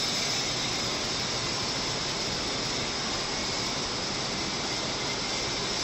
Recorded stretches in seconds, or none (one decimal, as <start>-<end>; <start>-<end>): 0.0-5.8